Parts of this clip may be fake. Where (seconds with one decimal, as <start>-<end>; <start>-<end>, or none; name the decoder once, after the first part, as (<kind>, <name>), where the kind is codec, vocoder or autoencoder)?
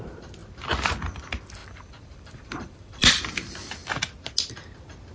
1.6-3.2 (vocoder, BigVGAN v2)